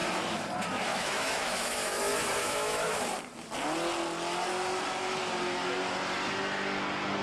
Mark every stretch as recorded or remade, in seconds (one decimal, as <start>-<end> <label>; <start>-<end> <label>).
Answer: 0.0-0.9 recorded; 0.9-2.0 remade; 2.0-2.4 recorded; 2.4-3.0 remade; 3.0-7.2 recorded